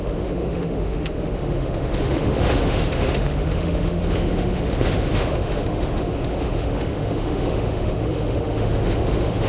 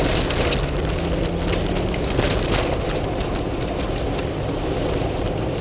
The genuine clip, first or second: second